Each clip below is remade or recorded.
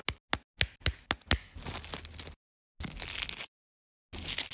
recorded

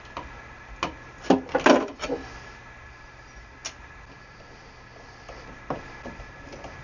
recorded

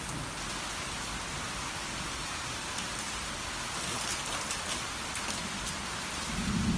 recorded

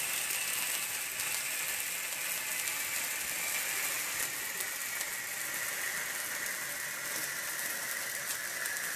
recorded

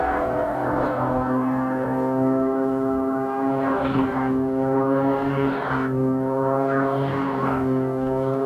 remade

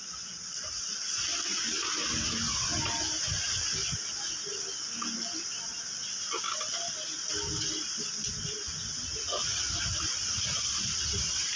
recorded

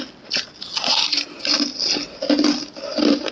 recorded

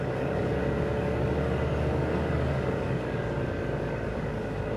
remade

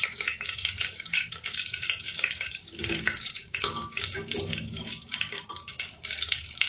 remade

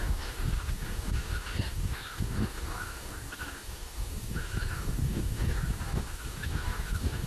remade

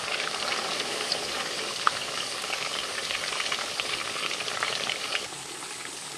remade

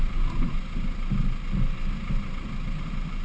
recorded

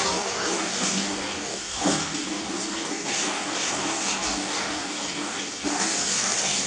remade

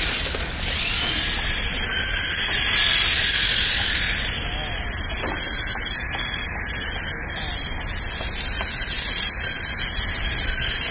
recorded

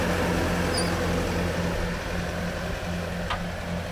recorded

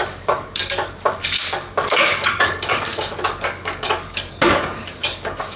remade